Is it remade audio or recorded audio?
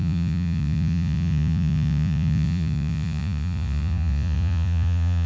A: remade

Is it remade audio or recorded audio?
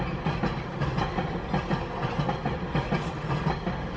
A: recorded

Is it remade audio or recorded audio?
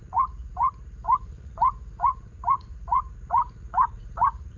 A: remade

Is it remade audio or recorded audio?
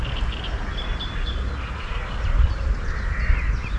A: recorded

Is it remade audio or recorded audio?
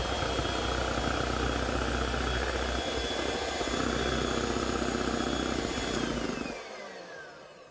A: recorded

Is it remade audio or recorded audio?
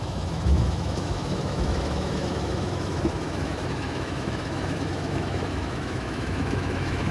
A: remade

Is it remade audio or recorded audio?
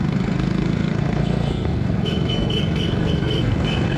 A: remade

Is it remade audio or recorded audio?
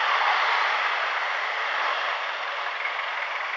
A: recorded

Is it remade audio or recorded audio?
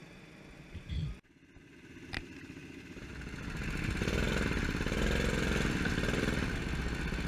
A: recorded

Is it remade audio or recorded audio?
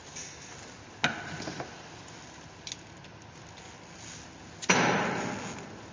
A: recorded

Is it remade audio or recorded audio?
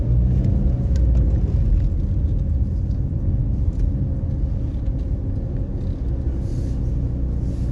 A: recorded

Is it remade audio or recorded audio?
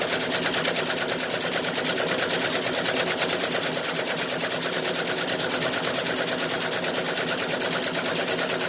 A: recorded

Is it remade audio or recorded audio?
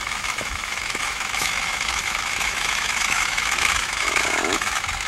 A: remade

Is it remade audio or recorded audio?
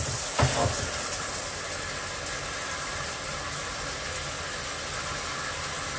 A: recorded